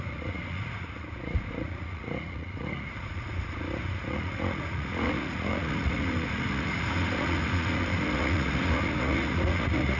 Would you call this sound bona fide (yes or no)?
no